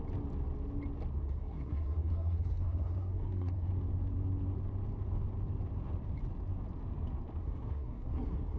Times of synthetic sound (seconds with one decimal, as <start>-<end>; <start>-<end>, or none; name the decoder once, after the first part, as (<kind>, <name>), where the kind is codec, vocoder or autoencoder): 1.2-3.7 (codec, SNAC); 7.4-8.6